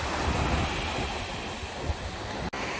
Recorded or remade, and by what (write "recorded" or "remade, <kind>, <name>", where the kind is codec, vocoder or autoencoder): recorded